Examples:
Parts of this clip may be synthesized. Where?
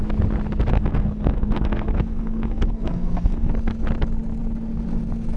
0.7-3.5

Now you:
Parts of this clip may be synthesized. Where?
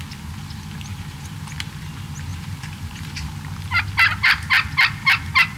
0.9-1.8; 2.3-3.3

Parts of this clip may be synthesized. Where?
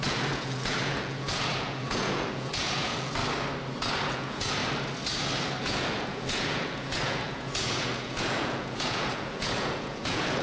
0.0-3.2; 3.9-4.6; 5.6-10.4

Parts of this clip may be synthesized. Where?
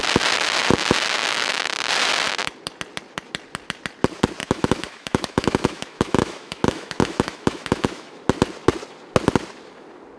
1.2-1.7; 4.4-8.2